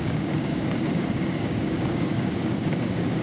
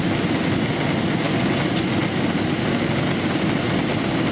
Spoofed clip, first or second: first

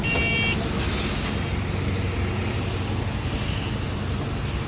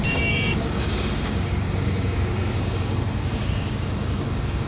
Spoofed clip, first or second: second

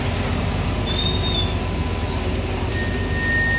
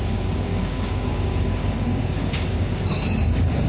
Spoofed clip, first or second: second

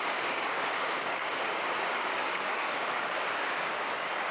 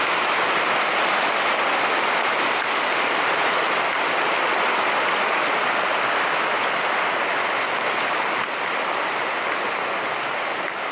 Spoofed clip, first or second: first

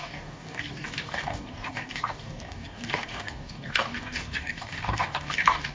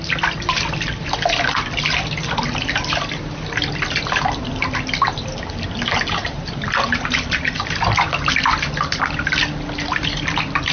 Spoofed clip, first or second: first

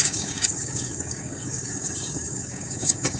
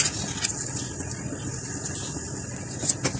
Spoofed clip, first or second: first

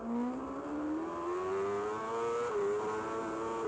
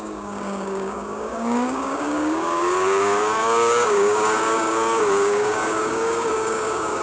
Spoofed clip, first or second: second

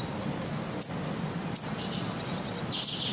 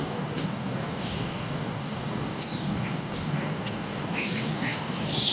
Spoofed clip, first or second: second